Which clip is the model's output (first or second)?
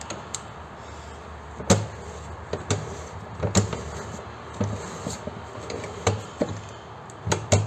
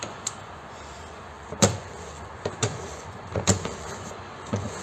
second